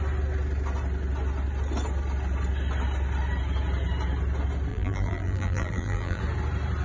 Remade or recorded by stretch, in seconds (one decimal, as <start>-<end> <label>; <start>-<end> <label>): 0.0-4.7 recorded; 4.7-6.2 remade; 6.2-6.8 recorded